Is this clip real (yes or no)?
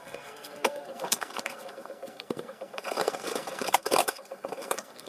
no